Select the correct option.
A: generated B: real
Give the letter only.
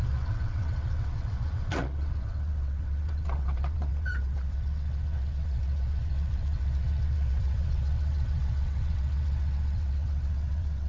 A